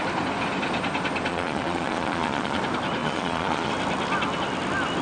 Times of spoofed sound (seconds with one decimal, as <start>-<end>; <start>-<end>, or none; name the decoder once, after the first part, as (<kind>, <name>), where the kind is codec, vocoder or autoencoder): 1.3-2.6 (vocoder, Vocos); 3.0-3.7